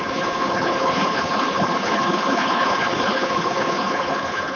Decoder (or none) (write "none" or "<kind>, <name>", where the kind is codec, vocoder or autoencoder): codec, HILCodec